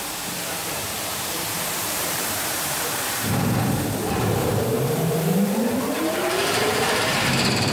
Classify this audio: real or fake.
fake